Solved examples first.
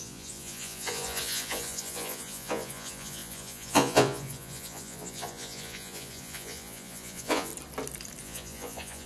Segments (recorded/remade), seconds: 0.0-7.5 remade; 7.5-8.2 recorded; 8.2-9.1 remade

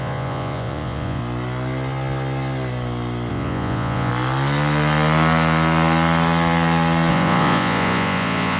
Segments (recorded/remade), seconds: 0.0-1.2 remade; 1.2-3.3 recorded; 3.3-4.1 remade; 4.1-7.1 recorded; 7.1-8.6 remade

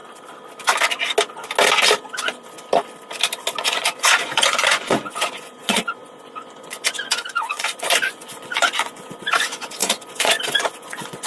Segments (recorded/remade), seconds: 0.0-3.6 recorded; 3.6-11.3 remade

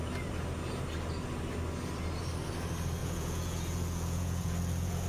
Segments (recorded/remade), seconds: 0.0-3.0 recorded; 3.0-5.1 remade

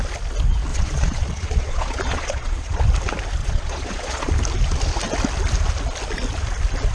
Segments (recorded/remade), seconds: 0.0-0.7 recorded; 0.7-2.8 remade; 2.8-3.4 recorded; 3.4-4.3 remade; 4.3-6.9 recorded

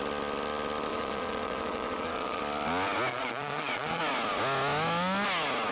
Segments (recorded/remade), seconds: 0.0-0.9 recorded; 0.9-2.4 remade; 2.4-3.1 recorded; 3.1-4.0 remade; 4.0-5.7 recorded

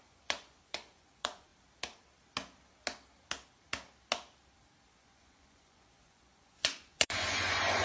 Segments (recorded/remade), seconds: 0.0-1.5 remade; 1.5-4.9 recorded; 4.9-7.8 remade

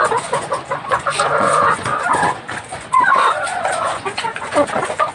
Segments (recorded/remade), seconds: 0.0-5.1 remade